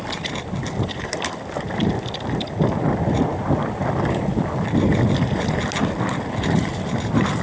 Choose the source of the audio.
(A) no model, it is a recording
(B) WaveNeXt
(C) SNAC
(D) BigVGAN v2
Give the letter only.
D